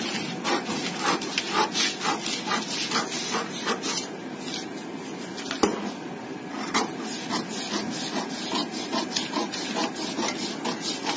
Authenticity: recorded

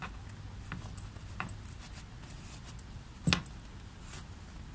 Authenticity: recorded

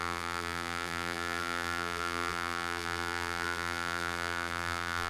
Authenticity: remade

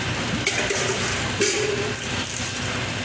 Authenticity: recorded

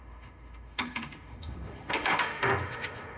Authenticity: remade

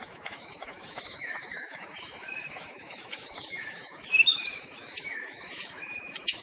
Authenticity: remade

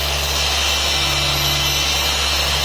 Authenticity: recorded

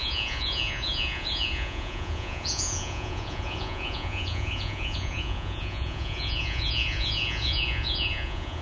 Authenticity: remade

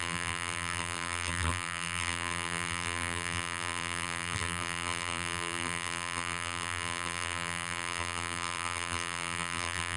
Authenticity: remade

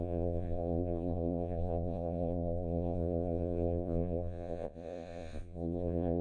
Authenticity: remade